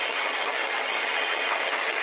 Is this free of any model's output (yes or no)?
no